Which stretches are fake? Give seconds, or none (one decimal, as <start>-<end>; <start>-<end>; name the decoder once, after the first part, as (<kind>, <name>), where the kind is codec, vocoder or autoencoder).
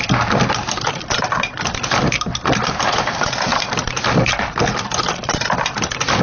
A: none